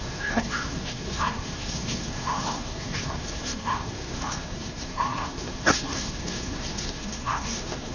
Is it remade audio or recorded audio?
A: remade